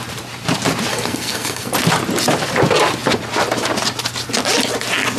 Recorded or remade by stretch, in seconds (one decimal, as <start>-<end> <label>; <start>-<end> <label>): 0.0-0.9 recorded; 0.9-1.7 remade; 1.7-5.2 recorded